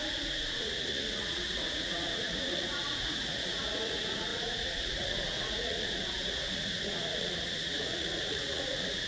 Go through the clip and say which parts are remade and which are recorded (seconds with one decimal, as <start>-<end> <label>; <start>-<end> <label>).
0.0-9.1 remade